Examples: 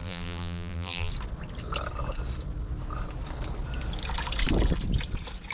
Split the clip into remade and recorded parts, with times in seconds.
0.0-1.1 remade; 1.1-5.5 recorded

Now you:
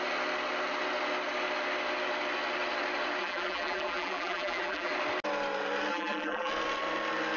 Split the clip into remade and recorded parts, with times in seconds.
0.0-3.2 recorded; 3.2-4.9 remade; 4.9-5.9 recorded; 5.9-6.5 remade; 6.5-7.4 recorded

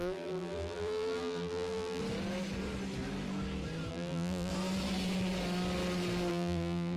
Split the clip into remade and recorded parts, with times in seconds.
0.0-2.0 remade; 2.0-3.9 recorded; 3.9-4.5 remade; 4.5-6.3 recorded; 6.3-7.0 remade